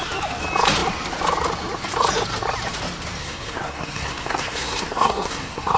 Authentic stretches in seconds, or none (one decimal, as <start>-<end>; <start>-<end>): 0.0-3.2